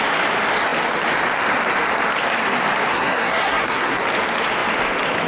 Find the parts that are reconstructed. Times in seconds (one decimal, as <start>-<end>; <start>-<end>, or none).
2.9-4.0